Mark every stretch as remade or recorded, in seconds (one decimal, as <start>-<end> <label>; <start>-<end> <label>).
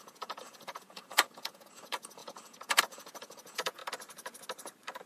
0.0-3.8 remade; 3.8-5.1 recorded